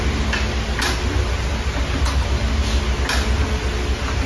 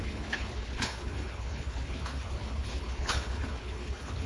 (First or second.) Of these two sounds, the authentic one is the first